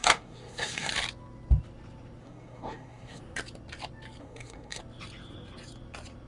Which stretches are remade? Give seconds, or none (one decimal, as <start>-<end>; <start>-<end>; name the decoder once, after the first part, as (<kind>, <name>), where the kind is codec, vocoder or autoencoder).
0.0-0.9 (codec, SNAC); 2.2-3.2; 4.2-4.8